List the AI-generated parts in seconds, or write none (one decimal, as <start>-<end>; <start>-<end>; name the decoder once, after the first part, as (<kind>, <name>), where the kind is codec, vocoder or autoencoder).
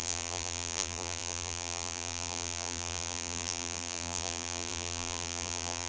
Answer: 0.0-5.9 (vocoder, BigVGAN v2)